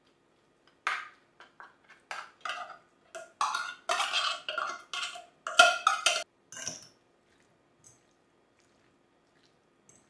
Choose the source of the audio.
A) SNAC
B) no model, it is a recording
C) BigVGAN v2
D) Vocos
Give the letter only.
B